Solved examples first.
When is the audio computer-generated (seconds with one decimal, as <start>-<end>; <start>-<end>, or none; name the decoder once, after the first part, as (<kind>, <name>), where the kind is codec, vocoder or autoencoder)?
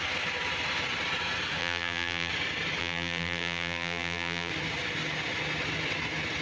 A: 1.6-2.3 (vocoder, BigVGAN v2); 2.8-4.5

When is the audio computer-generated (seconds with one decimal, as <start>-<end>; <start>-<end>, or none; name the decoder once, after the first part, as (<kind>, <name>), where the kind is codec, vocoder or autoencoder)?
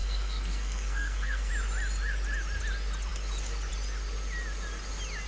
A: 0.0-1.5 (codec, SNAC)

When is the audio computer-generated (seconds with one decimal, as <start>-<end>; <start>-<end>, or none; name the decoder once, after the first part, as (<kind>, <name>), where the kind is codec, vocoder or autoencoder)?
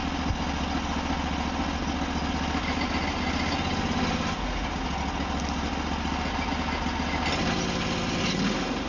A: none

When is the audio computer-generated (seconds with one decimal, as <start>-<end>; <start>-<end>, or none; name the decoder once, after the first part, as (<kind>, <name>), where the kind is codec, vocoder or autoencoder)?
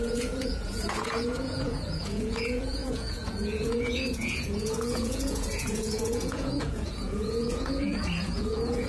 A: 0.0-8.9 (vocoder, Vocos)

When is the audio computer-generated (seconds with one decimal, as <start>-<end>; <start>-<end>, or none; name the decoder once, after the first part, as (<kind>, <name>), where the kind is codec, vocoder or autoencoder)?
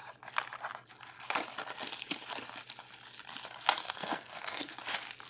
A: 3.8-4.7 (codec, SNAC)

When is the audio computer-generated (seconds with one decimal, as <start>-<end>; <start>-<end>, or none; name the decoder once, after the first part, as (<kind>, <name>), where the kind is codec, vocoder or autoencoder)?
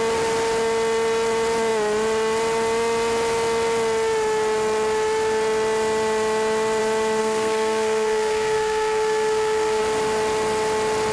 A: 7.2-9.8 (codec, SNAC)